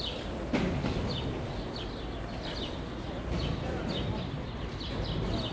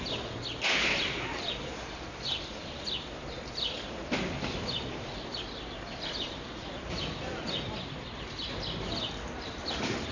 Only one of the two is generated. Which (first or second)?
second